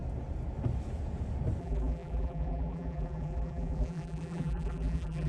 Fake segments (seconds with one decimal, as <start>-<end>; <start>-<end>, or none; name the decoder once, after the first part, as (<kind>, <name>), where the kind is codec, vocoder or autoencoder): 1.6-5.3 (vocoder, BigVGAN v2)